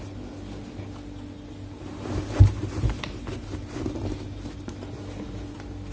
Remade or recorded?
recorded